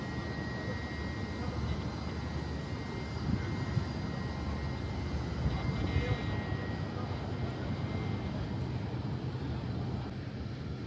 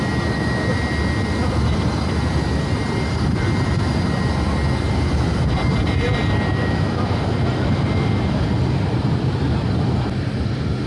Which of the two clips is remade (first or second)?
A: second